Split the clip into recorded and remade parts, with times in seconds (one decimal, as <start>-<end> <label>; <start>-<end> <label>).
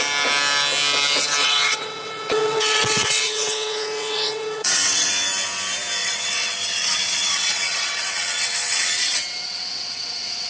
0.0-1.4 recorded; 1.4-5.1 remade; 5.1-6.0 recorded; 6.0-10.5 remade